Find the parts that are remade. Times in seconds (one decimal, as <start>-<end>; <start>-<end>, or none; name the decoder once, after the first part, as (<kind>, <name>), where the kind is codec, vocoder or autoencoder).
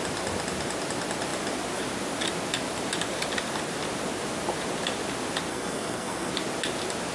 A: 5.5-6.3 (codec, SNAC)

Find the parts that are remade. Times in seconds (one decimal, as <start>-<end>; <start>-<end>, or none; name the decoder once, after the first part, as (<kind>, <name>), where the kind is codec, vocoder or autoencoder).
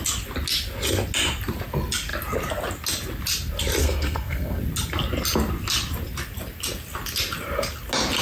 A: 3.8-4.6 (codec, SNAC)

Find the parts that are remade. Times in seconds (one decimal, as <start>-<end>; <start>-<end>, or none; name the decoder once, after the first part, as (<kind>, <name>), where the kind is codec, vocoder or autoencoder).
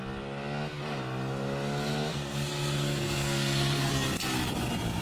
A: 2.1-3.9 (codec, SNAC)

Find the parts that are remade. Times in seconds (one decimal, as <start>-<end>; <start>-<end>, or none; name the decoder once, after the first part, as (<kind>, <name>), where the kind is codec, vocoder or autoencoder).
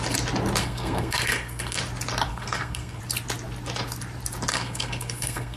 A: 0.6-1.8 (codec, SNAC); 2.3-3.0; 4.5-5.6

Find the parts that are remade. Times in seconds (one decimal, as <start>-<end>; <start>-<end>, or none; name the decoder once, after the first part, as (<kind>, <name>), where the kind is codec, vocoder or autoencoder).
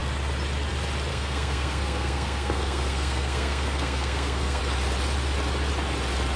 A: 1.1-4.6 (codec, SNAC)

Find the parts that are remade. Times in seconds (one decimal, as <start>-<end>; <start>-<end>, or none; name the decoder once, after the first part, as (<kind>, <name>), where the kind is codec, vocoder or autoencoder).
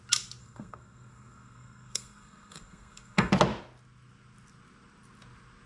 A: 0.4-3.3 (codec, SNAC)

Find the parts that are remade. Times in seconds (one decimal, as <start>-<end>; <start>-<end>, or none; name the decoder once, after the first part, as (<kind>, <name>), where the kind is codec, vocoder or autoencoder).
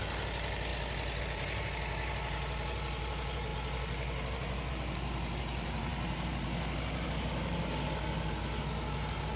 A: none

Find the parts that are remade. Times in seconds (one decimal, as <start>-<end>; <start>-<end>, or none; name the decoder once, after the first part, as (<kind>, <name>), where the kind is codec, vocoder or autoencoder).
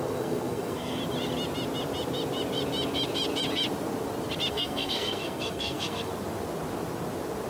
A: 0.0-1.0 (codec, SNAC); 4.5-6.1